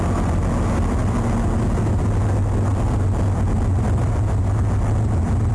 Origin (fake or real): real